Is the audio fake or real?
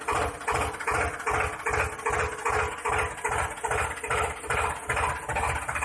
real